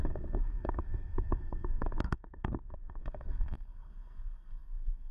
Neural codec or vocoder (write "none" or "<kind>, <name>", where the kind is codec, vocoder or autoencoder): codec, SNAC